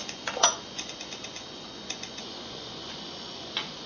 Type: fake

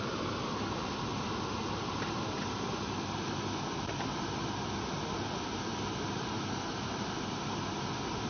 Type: real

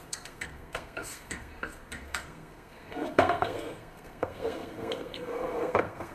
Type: fake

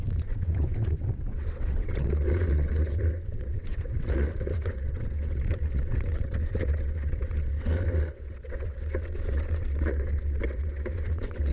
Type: fake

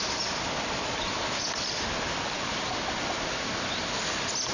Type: real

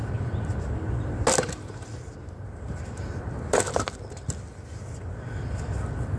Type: real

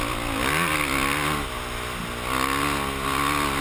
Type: real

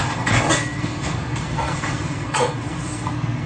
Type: fake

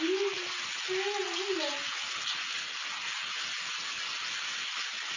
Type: real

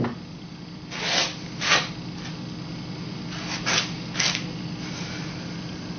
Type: real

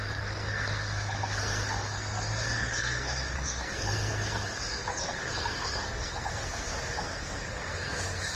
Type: fake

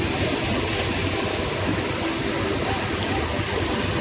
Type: real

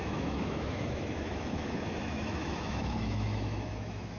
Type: fake